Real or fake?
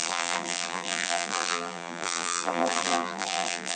fake